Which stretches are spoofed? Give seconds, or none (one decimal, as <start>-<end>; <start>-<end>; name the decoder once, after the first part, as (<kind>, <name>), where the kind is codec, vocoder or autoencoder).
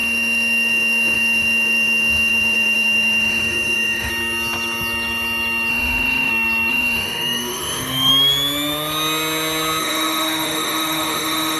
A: 0.0-4.1 (autoencoder, DAC-VAE); 5.7-6.3; 6.7-8.1; 9.8-11.6